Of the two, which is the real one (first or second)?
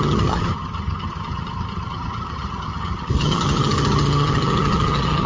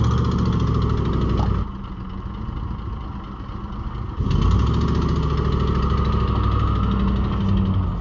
second